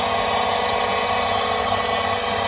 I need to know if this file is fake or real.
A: real